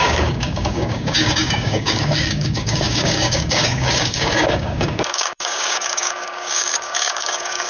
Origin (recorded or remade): remade